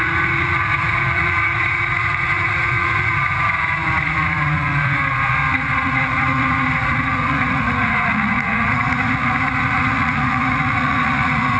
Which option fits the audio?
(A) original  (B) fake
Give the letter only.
B